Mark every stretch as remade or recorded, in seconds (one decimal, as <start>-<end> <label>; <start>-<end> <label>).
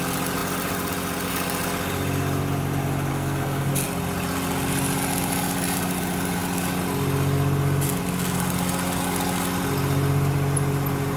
0.0-3.1 recorded; 3.1-3.7 remade; 3.7-11.2 recorded